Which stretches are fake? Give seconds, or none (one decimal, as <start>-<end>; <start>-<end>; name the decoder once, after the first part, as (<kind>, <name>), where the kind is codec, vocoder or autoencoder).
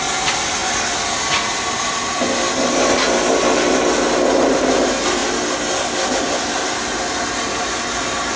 none